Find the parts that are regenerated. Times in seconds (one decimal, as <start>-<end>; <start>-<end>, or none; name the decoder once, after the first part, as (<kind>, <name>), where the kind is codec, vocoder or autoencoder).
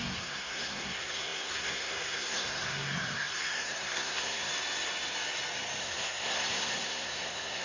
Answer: 0.0-4.5 (codec, SNAC); 5.8-7.6